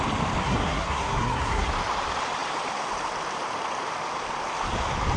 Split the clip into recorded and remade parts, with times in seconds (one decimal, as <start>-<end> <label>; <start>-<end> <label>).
0.0-0.4 recorded; 0.4-1.7 remade; 1.7-5.2 recorded